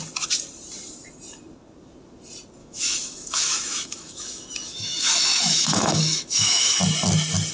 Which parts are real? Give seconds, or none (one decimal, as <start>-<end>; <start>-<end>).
0.0-2.6; 6.8-7.5